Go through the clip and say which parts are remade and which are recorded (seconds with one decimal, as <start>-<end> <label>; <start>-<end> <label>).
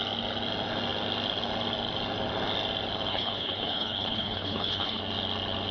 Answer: 0.0-3.1 recorded; 3.1-5.0 remade; 5.0-5.7 recorded